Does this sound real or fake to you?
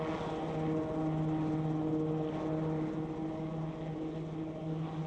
real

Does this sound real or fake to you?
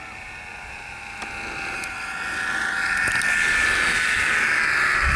real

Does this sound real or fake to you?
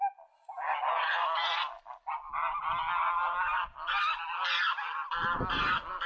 real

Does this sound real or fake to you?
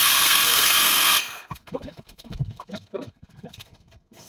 fake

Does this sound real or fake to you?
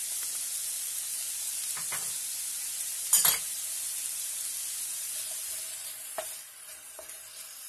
real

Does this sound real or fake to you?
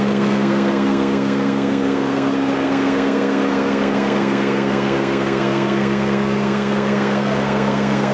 fake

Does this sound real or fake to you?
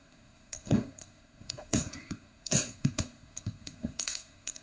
fake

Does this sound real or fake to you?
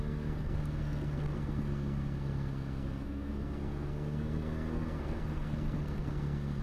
fake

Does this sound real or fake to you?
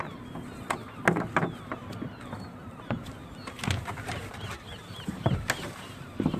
real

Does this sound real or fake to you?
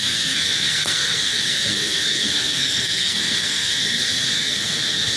fake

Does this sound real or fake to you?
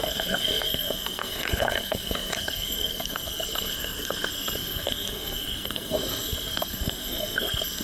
fake